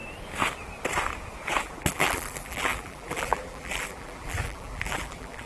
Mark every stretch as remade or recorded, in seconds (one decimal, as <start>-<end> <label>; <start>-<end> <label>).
0.0-1.6 recorded; 1.6-5.5 remade